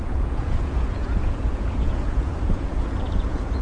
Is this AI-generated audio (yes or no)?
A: yes